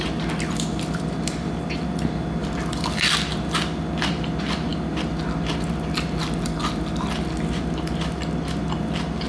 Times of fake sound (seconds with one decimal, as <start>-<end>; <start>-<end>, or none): none